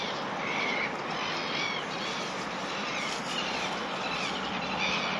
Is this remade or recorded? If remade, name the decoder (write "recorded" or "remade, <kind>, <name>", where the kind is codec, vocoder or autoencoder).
recorded